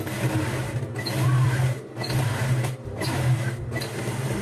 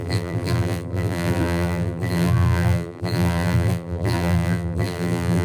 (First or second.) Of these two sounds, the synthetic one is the second